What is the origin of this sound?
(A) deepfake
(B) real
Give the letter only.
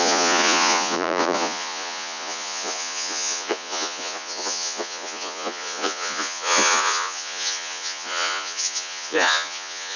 A